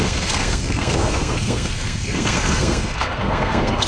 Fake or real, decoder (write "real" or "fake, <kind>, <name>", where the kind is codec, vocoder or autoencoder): fake, codec, SNAC